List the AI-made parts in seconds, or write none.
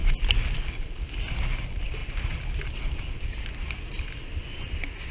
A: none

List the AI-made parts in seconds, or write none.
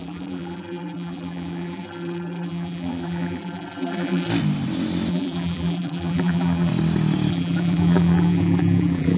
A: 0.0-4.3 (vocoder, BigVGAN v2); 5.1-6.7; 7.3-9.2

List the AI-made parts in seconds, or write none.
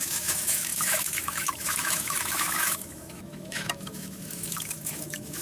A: 0.0-5.4 (autoencoder, DAC-VAE)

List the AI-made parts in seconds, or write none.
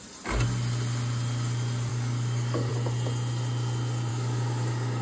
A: 1.9-2.7 (codec, DAC); 4.1-5.0